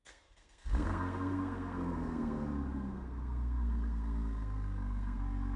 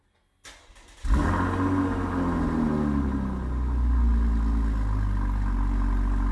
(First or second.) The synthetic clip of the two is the first